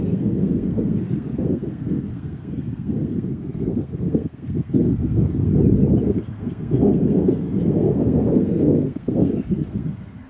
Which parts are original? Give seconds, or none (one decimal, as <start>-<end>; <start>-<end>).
5.5-6.0